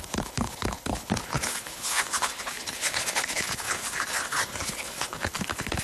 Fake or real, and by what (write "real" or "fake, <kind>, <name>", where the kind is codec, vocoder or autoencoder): fake, codec, HILCodec